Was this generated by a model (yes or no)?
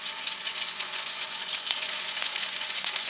yes